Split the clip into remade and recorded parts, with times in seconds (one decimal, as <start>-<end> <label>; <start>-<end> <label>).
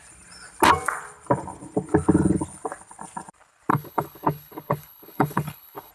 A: 0.0-3.7 recorded; 3.7-5.9 remade